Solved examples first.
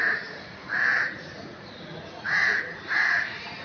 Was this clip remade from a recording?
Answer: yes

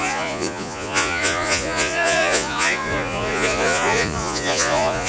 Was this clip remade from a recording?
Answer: yes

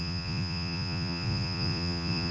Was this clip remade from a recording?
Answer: yes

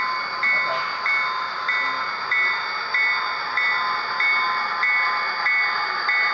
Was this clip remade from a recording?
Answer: no